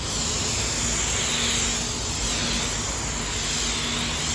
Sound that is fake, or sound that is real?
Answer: real